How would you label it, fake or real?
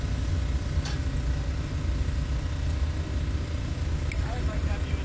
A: real